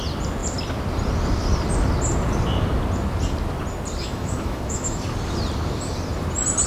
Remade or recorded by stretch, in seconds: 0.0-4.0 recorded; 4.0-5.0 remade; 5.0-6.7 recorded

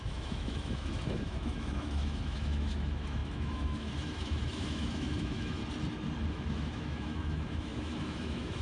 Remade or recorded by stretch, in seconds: 0.0-5.6 remade; 5.6-6.3 recorded; 6.3-8.6 remade

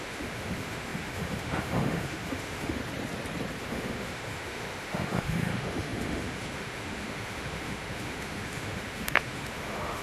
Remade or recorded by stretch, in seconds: 0.0-2.8 remade; 2.8-3.6 recorded; 3.6-10.0 remade

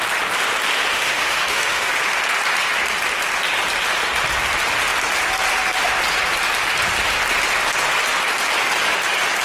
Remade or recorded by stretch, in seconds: 0.0-0.9 recorded; 0.9-1.9 remade; 1.9-9.4 recorded

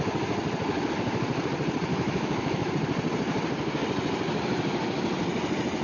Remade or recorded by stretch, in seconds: 0.0-1.9 recorded; 1.9-2.7 remade; 2.7-5.8 recorded

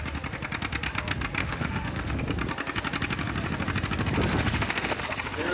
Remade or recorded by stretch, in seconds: 0.0-1.4 recorded; 1.4-2.2 remade; 2.2-4.3 recorded; 4.3-5.0 remade; 5.0-5.5 recorded

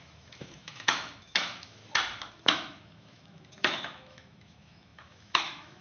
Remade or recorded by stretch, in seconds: 0.0-1.8 remade; 1.8-2.3 recorded; 2.3-5.8 remade